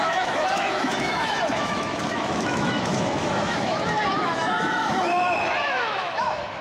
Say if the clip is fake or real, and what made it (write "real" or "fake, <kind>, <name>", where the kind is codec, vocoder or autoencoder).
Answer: fake, autoencoder, DAC-VAE